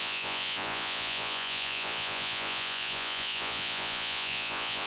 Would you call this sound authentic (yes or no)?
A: no